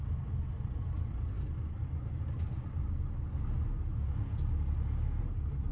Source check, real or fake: real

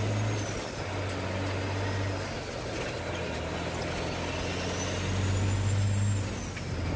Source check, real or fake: real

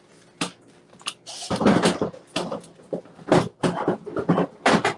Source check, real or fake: real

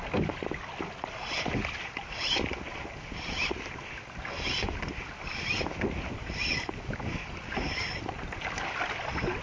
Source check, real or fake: real